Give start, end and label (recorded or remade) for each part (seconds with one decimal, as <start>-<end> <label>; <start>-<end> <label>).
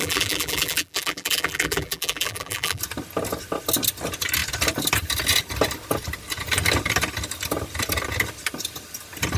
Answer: 0.0-2.8 remade; 2.8-9.4 recorded